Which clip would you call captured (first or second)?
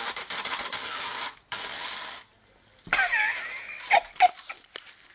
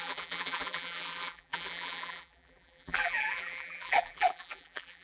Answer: first